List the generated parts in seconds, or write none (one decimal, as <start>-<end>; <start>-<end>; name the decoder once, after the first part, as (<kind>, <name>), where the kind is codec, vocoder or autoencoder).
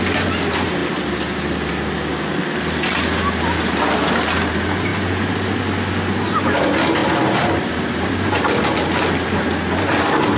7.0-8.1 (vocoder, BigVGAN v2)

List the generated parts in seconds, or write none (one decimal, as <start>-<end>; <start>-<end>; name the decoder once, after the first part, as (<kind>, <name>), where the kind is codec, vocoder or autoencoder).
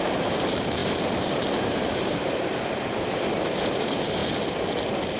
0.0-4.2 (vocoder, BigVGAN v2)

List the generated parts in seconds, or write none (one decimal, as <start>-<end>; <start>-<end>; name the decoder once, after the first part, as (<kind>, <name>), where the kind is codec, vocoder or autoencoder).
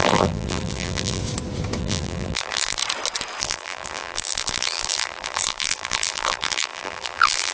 0.0-1.2 (vocoder, BigVGAN v2); 1.8-2.8; 3.4-7.5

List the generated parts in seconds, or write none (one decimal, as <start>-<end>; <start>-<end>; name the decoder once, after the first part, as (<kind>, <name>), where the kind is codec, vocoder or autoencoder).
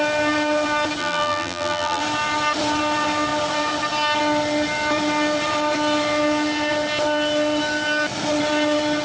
1.0-2.0 (vocoder, BigVGAN v2)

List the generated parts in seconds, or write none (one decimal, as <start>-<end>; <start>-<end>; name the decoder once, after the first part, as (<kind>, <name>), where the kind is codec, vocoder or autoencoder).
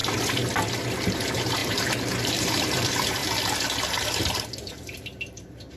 1.1-3.2 (vocoder, BigVGAN v2); 4.7-5.8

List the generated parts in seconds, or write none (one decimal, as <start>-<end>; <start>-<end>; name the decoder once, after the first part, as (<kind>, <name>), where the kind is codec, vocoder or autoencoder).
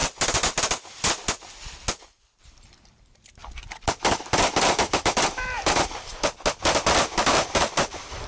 2.4-3.4 (vocoder, BigVGAN v2); 5.1-6.1; 7.3-8.3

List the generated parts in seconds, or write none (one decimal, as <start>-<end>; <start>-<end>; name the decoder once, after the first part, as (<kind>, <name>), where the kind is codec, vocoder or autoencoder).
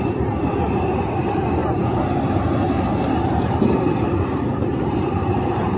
4.6-5.8 (vocoder, BigVGAN v2)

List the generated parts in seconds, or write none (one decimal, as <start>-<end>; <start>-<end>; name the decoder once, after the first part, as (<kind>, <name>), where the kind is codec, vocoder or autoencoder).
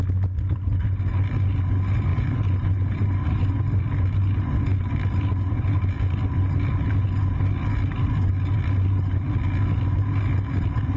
2.1-3.5 (vocoder, BigVGAN v2)